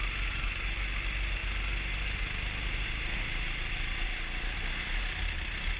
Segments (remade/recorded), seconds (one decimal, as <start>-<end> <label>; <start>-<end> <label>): 0.0-5.8 recorded